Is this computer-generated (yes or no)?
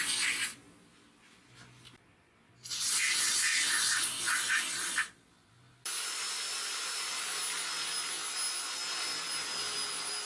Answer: no